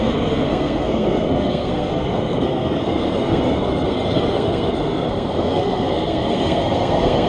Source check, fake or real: fake